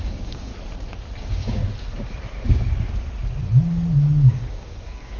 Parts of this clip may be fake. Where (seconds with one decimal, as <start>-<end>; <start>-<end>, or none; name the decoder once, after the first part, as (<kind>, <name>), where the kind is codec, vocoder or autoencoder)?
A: 0.0-0.5 (codec, DAC); 1.2-1.6; 4.3-5.2

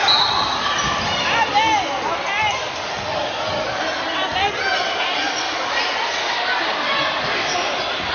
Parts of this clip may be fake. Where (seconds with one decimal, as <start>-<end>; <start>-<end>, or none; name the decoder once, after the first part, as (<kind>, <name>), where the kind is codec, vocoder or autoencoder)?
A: none